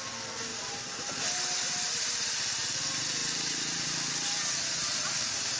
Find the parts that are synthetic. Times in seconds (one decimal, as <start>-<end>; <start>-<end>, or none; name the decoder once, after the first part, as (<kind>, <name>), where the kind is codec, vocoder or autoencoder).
0.5-1.2 (vocoder, BigVGAN v2); 3.2-4.6